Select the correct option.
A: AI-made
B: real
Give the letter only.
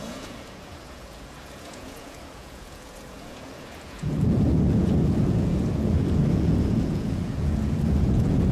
A